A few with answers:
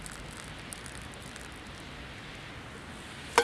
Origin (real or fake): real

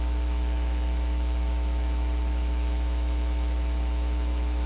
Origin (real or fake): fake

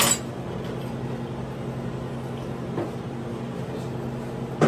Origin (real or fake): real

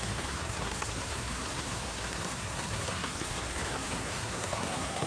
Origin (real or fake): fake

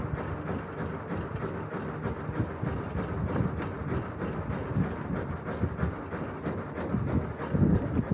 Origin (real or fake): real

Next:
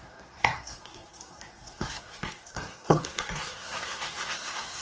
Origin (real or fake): fake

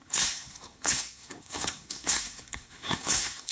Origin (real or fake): fake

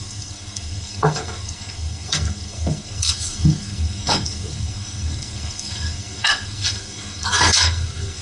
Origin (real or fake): fake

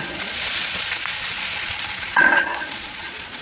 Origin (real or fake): fake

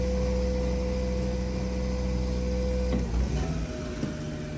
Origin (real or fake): real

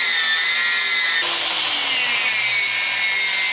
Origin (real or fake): real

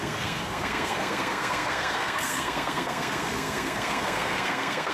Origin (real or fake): fake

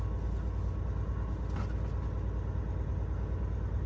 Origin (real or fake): real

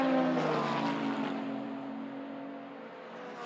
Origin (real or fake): real